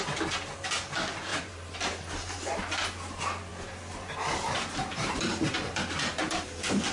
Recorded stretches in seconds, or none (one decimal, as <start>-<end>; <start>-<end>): 0.0-1.3; 2.6-3.5; 6.4-6.9